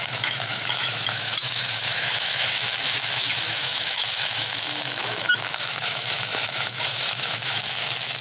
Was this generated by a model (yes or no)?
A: yes